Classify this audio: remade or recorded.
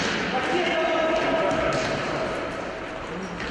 recorded